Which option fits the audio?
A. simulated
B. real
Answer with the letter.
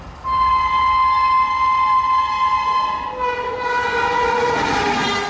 B